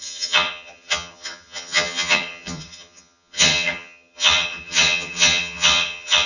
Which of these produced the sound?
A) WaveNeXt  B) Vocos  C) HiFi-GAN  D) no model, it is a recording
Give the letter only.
C